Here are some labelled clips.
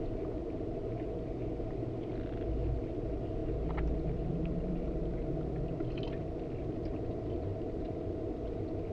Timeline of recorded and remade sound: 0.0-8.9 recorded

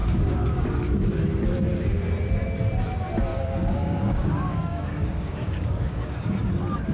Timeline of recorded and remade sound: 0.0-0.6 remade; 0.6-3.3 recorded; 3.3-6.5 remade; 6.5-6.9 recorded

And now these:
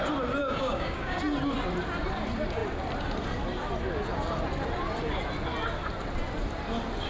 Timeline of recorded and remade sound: 0.0-0.4 recorded; 0.4-1.2 remade; 1.2-7.1 recorded

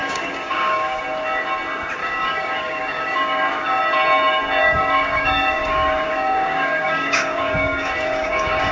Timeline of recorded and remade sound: 0.0-1.0 remade; 1.0-2.0 recorded; 2.0-3.8 remade; 3.8-4.6 recorded; 4.6-8.7 remade